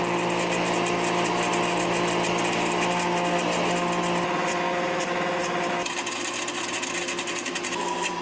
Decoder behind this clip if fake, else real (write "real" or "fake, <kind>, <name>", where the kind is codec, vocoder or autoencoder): real